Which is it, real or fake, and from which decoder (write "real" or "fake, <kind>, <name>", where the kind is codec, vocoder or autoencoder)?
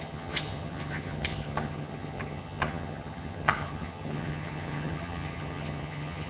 fake, vocoder, HiFi-GAN